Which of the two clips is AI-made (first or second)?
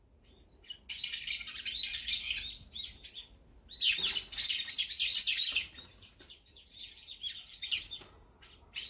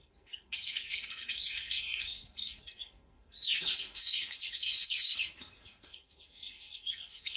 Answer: second